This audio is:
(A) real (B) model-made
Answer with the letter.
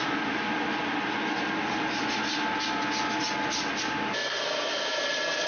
A